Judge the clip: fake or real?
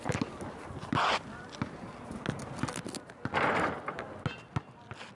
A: real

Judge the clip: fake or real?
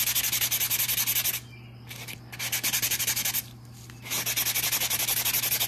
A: real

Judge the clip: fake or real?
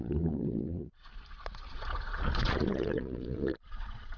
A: fake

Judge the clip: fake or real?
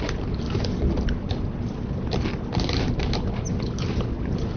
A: real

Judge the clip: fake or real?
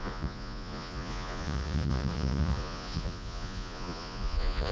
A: fake